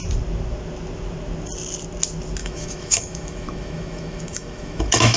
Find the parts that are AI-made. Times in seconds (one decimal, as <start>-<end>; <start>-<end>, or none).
2.4-5.2